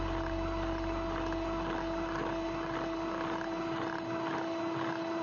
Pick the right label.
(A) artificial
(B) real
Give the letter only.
B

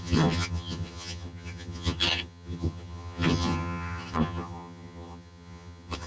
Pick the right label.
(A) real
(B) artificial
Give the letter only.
B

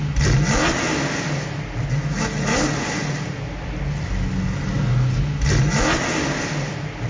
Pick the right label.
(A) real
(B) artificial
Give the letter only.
A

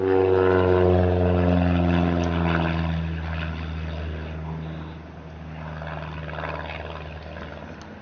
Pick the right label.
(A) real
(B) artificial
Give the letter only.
A